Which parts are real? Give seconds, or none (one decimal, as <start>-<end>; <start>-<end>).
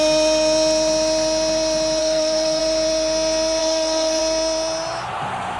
0.0-2.0; 2.6-3.6; 4.2-5.6